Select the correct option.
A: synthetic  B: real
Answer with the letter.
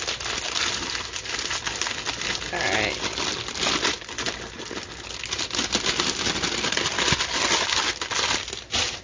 B